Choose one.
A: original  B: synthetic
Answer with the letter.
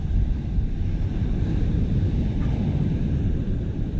B